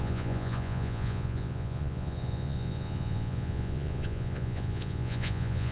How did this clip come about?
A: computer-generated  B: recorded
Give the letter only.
A